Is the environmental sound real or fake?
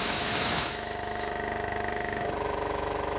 fake